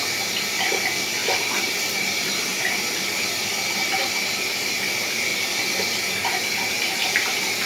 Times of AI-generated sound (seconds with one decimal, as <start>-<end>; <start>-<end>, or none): 1.2-4.1